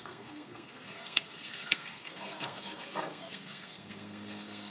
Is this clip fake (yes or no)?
yes